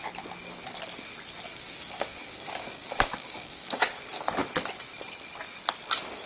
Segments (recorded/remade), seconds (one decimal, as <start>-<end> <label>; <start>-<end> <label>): 0.0-1.5 recorded; 1.5-3.8 remade; 3.8-6.3 recorded